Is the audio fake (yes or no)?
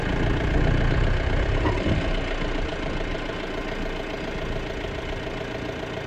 no